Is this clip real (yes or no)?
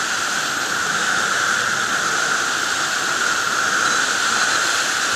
yes